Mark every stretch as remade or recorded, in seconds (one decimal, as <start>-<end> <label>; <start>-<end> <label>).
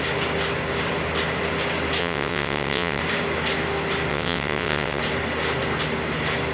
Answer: 0.0-2.0 recorded; 2.0-3.0 remade; 3.0-4.1 recorded; 4.1-5.0 remade; 5.0-6.5 recorded